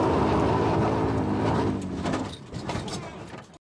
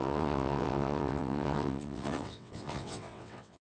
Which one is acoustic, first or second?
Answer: first